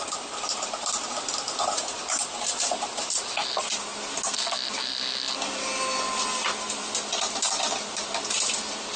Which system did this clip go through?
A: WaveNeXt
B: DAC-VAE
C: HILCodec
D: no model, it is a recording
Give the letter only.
D